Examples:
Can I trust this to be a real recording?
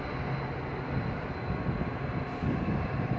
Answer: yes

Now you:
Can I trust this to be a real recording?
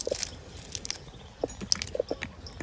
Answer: yes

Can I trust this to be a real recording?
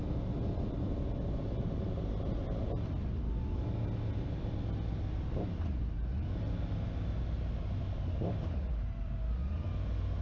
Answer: yes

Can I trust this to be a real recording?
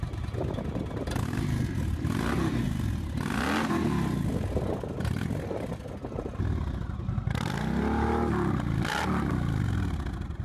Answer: yes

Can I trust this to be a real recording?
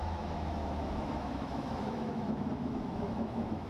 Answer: no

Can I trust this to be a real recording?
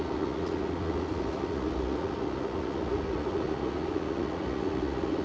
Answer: no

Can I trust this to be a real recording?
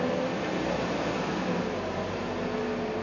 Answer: yes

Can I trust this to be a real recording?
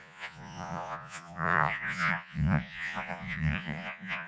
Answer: no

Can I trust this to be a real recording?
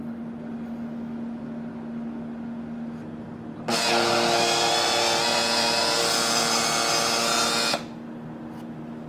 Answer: yes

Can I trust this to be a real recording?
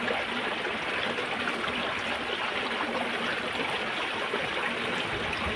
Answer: yes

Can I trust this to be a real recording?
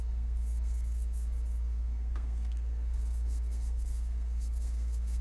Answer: no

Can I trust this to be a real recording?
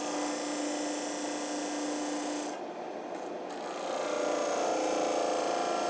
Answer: yes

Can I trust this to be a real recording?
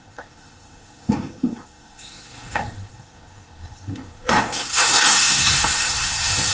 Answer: no